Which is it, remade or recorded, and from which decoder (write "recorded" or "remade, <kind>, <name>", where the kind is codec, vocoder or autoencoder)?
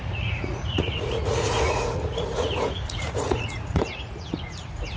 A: remade, vocoder, Vocos